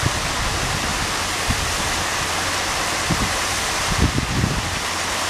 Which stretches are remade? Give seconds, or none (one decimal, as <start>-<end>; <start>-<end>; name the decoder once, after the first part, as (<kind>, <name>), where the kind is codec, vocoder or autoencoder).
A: 0.0-2.1 (vocoder, BigVGAN v2)